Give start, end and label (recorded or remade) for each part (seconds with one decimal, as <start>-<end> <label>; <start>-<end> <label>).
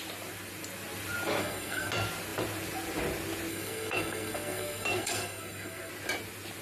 0.0-1.4 recorded; 1.4-1.9 remade; 1.9-3.5 recorded; 3.5-5.9 remade; 5.9-6.6 recorded